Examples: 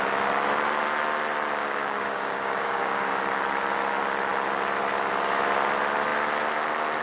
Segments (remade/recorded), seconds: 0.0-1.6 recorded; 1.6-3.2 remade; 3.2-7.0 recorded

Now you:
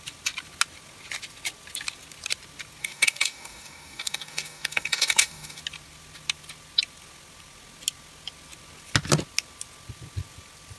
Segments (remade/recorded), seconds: 0.0-2.8 recorded; 2.8-5.6 remade; 5.6-10.8 recorded

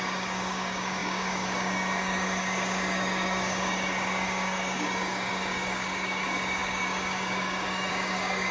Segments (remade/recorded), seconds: 0.0-8.5 remade

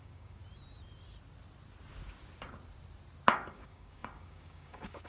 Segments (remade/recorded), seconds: 0.0-0.4 remade; 0.4-3.5 recorded; 3.5-5.1 remade

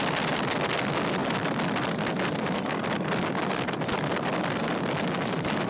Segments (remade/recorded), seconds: 0.0-5.7 recorded

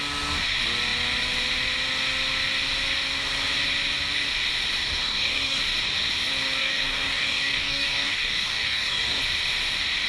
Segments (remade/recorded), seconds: 0.0-5.0 recorded; 5.0-5.6 remade; 5.6-6.6 recorded; 6.6-9.2 remade; 9.2-10.1 recorded

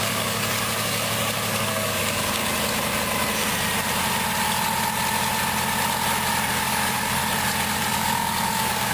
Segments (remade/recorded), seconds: 0.0-2.4 remade; 2.4-6.6 recorded; 6.6-7.2 remade; 7.2-7.9 recorded; 7.9-8.9 remade